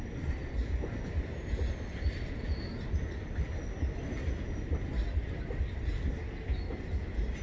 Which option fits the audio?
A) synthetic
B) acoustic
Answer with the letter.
B